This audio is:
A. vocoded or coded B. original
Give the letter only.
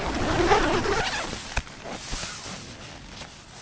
B